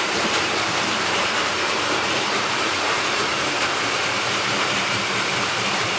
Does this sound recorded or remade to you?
remade